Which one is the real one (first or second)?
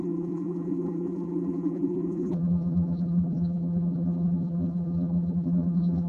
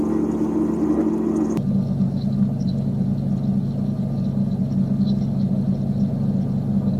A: second